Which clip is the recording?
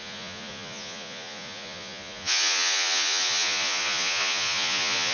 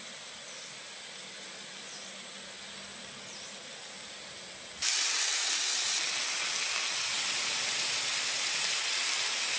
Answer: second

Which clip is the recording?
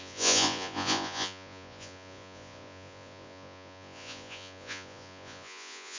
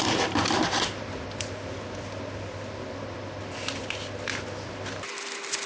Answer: second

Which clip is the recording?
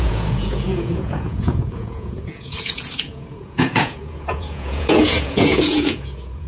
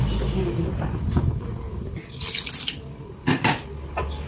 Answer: second